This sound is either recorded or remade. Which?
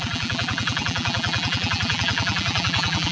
remade